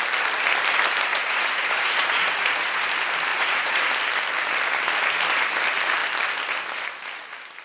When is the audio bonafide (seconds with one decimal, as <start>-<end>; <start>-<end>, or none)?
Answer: 0.0-1.1; 2.9-3.3; 3.8-7.6